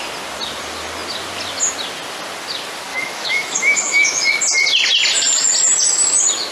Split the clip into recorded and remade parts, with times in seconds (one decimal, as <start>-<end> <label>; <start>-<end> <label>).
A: 0.0-2.9 recorded; 2.9-4.3 remade; 4.3-6.5 recorded